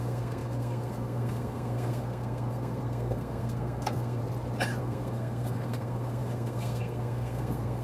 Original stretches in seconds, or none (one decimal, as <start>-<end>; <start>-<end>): 4.2-4.8

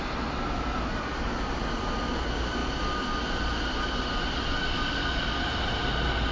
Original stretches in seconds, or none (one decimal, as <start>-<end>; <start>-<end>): 0.0-6.3

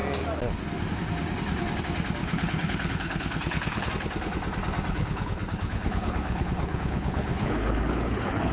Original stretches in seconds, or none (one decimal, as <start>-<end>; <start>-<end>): 0.0-2.2; 3.9-4.9

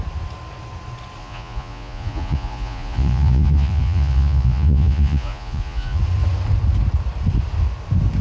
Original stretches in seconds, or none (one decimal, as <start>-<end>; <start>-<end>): 0.0-1.2; 6.0-8.2

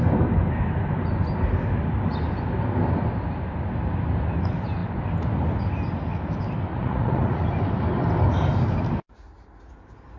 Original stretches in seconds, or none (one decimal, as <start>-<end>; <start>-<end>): 0.0-6.7; 7.5-10.2